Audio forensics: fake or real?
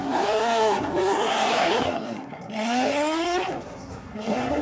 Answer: fake